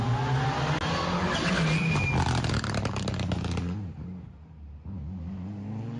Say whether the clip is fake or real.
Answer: real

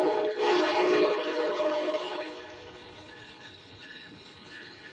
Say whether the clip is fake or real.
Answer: fake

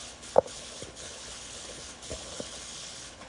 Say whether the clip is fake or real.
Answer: fake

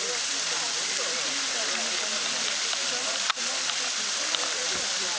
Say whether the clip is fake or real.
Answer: real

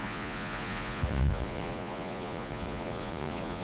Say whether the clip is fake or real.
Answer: fake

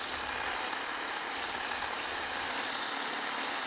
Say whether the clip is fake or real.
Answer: real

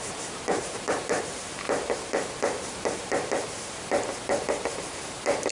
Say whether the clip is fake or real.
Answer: fake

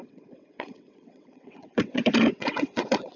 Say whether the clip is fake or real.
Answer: fake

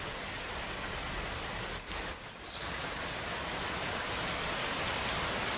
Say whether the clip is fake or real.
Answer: real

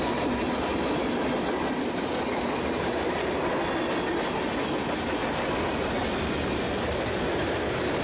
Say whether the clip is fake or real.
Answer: real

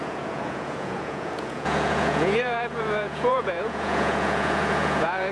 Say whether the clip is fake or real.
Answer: fake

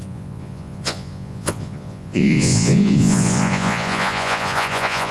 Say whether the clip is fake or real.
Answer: fake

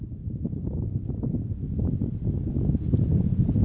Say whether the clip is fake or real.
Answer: real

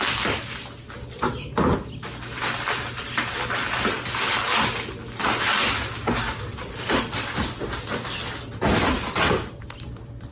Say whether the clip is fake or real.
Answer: real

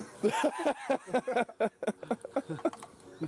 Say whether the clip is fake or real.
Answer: real